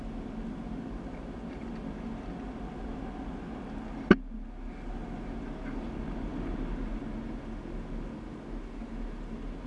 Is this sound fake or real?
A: real